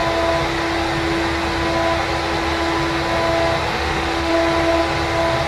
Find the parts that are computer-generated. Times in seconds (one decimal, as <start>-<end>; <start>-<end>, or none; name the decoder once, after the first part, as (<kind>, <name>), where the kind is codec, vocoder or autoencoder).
3.7-4.3 (autoencoder, DAC-VAE)